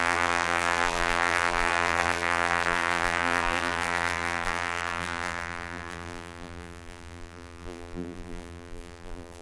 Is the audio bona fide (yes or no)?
no